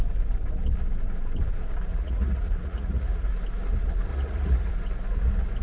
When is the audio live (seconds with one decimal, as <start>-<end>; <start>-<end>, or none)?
0.0-1.9; 3.3-4.1; 4.7-5.6

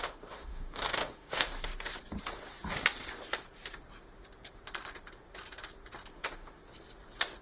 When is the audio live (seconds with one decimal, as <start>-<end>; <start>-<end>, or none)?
1.7-6.1; 6.6-7.4

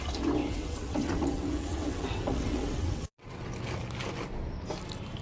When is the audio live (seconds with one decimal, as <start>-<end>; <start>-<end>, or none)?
0.0-0.4; 3.5-5.2

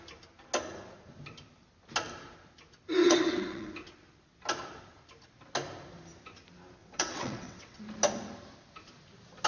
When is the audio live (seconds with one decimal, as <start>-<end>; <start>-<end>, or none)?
0.0-3.0; 3.7-6.8; 7.8-9.5

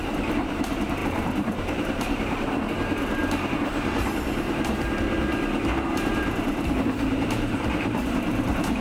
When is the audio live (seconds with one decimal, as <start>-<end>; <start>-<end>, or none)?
3.2-5.9

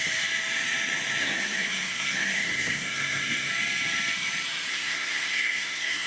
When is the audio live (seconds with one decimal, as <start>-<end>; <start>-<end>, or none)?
0.0-1.2; 3.5-4.7

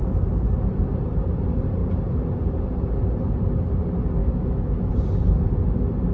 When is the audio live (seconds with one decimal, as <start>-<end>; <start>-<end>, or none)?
0.0-4.2; 4.9-6.1